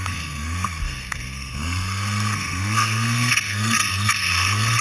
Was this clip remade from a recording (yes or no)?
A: yes